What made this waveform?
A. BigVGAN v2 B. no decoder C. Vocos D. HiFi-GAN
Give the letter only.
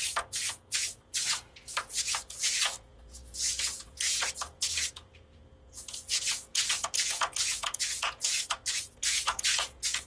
C